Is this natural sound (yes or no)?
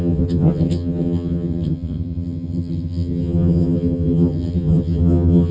no